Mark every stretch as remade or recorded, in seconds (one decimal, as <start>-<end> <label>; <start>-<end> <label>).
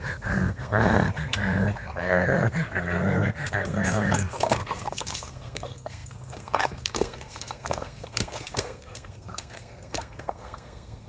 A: 0.0-11.1 remade